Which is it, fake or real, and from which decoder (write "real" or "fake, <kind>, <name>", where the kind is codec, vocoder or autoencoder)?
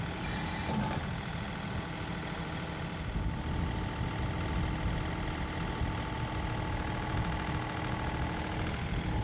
real